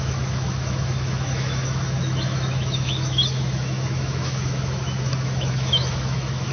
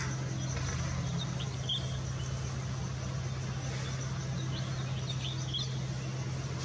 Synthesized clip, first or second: first